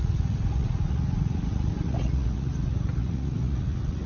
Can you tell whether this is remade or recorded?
remade